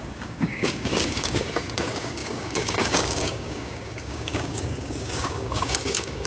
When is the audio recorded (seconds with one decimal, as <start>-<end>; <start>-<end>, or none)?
none